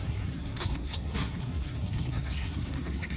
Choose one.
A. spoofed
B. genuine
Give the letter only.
A